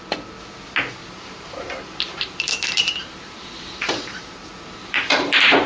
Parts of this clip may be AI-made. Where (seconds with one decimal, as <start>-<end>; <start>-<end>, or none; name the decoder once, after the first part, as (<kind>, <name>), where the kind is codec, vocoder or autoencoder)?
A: 1.0-4.2 (vocoder, BigVGAN v2); 4.8-5.7